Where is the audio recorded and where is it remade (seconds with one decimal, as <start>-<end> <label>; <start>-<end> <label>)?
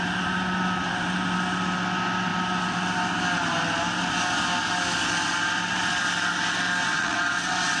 0.0-6.8 recorded; 6.8-7.8 remade